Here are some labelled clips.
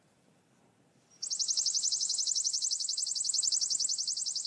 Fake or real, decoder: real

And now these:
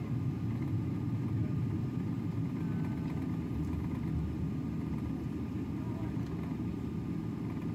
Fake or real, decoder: real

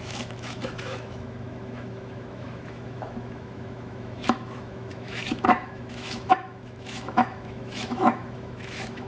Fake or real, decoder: fake, autoencoder, DAC-VAE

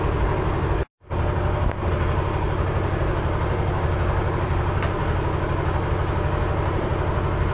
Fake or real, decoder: real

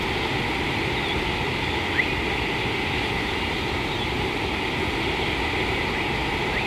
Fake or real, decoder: real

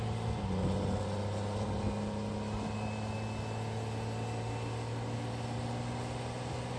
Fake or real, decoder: real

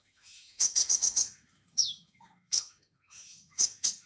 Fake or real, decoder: fake, autoencoder, DAC-VAE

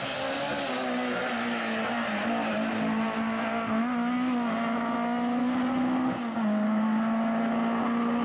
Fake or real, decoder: real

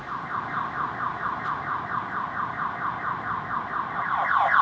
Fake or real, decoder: real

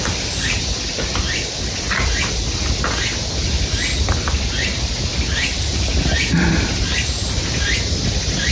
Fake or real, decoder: real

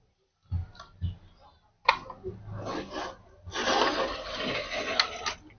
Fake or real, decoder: real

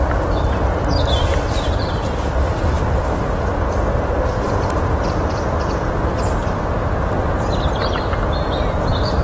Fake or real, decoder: real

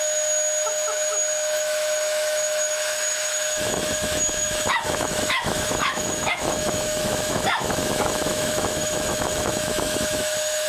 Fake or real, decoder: fake, autoencoder, DAC-VAE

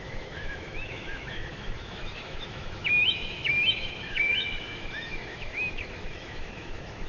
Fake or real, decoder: fake, autoencoder, DAC-VAE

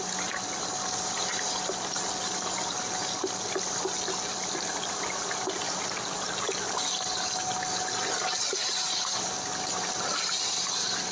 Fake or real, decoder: real